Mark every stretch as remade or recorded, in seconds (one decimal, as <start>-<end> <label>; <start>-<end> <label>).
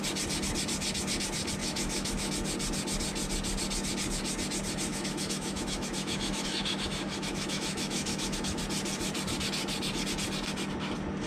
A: 0.0-1.6 recorded; 1.6-2.3 remade; 2.3-4.9 recorded; 4.9-8.6 remade; 8.6-11.3 recorded